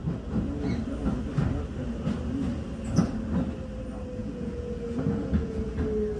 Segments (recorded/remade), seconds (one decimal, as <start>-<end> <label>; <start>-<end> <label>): 0.0-4.2 recorded; 4.2-5.7 remade; 5.7-6.2 recorded